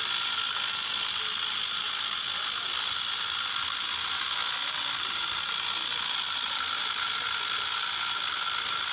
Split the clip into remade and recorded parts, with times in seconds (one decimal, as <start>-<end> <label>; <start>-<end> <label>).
0.0-8.9 recorded